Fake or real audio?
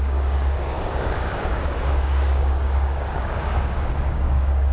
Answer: fake